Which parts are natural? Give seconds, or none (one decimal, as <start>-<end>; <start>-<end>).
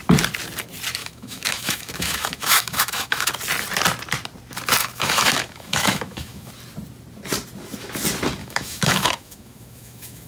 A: 0.0-1.0; 3.3-4.8; 6.5-8.4